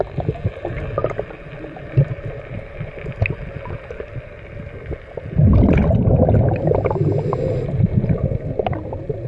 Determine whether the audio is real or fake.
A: real